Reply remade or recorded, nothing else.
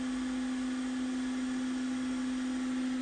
recorded